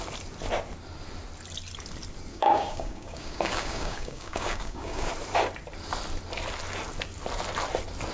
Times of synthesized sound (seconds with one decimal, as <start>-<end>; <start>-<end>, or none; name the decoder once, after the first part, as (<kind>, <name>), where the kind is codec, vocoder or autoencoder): 2.3-5.1 (codec, DAC)